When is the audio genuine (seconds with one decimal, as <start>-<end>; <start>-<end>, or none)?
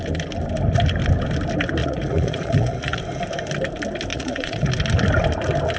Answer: 0.0-1.8; 3.0-4.1; 4.7-5.8